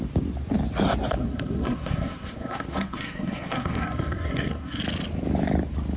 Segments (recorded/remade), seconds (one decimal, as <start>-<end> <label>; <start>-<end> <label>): 0.0-1.2 recorded; 1.2-4.8 remade; 4.8-6.0 recorded